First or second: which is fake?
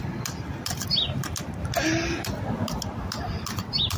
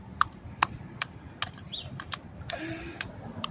second